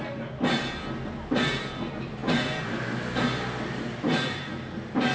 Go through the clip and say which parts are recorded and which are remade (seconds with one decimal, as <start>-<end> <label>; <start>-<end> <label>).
0.0-5.1 recorded